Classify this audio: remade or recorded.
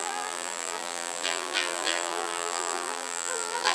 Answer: remade